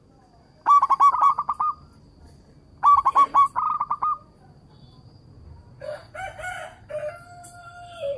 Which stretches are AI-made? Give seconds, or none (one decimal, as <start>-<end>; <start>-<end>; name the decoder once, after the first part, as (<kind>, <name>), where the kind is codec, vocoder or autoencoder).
none